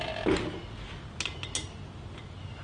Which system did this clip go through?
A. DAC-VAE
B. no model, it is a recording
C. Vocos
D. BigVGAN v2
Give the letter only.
B